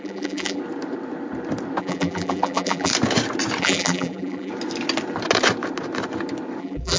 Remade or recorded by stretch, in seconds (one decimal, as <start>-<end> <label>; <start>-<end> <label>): 0.0-0.6 remade; 0.6-1.8 recorded; 1.8-2.9 remade; 2.9-3.6 recorded; 3.6-4.5 remade; 4.5-6.6 recorded; 6.6-7.0 remade